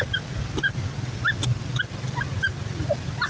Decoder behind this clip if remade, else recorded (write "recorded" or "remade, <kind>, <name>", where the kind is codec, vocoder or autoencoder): recorded